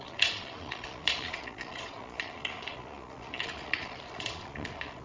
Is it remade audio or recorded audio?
remade